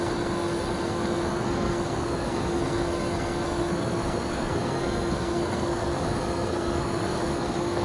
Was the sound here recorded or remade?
remade